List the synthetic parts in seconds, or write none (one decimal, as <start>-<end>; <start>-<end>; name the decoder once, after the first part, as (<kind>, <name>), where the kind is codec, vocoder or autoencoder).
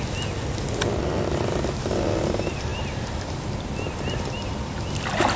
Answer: none